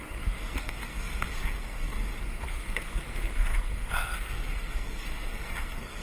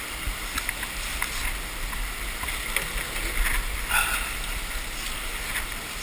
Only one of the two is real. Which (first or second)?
second